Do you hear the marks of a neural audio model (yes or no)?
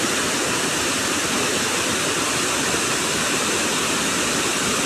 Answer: no